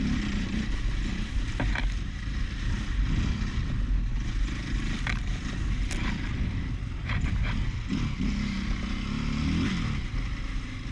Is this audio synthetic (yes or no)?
no